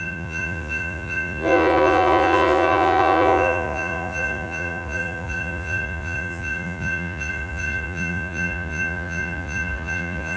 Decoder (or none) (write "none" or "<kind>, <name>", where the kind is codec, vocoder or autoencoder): vocoder, Vocos